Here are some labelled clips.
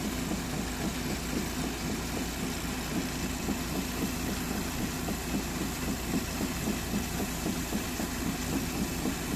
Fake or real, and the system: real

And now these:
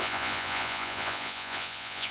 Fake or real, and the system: fake, vocoder, Vocos